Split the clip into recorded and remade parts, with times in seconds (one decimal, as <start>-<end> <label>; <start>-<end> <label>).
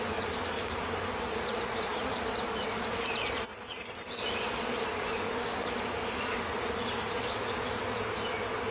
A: 0.0-8.7 remade